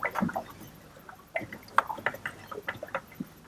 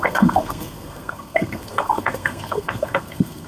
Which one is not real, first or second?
second